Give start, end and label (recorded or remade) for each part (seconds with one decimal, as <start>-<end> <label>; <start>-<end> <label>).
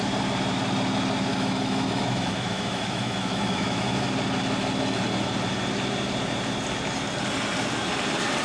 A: 0.0-1.3 recorded; 1.3-4.1 remade; 4.1-8.4 recorded